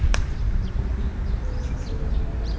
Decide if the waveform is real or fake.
fake